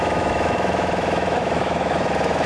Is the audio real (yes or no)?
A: no